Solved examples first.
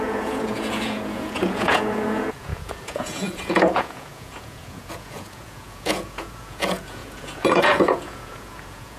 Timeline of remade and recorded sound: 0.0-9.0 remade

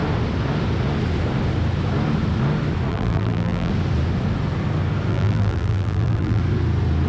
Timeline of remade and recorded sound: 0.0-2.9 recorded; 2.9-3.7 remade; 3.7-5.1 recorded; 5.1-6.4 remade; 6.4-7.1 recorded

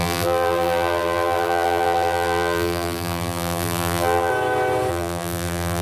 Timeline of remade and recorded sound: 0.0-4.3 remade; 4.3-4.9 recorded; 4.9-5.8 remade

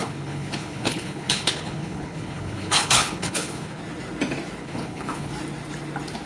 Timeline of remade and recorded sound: 0.0-3.8 remade; 3.8-4.6 recorded; 4.6-5.3 remade; 5.3-6.3 recorded

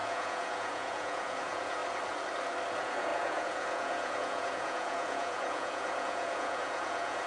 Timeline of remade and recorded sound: 0.0-1.8 remade; 1.8-2.7 recorded; 2.7-7.3 remade